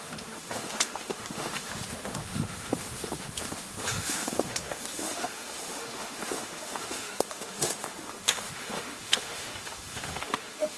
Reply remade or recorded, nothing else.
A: remade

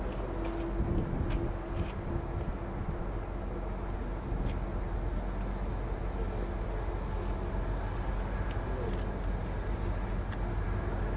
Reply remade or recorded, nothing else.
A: recorded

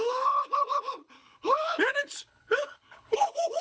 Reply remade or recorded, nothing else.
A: remade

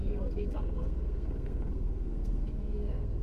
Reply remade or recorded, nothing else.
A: remade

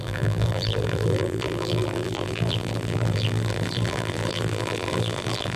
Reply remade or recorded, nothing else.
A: remade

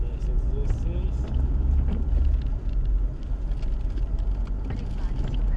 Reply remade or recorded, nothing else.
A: recorded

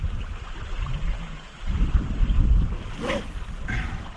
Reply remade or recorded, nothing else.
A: remade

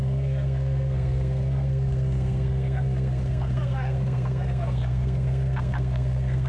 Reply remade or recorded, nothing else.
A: remade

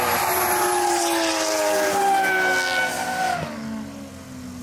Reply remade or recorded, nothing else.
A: recorded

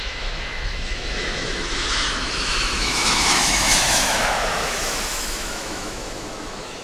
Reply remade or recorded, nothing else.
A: remade